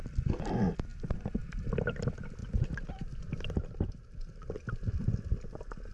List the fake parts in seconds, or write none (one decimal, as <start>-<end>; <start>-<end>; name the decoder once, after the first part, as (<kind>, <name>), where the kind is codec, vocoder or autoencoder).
0.9-1.4 (vocoder, BigVGAN v2); 2.4-4.5